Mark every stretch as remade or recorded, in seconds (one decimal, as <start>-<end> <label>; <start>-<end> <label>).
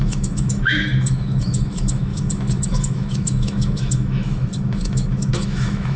0.0-6.0 remade